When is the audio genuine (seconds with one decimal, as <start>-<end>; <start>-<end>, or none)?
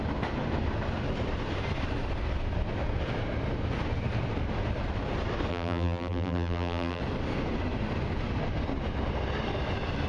0.0-5.5; 7.0-10.1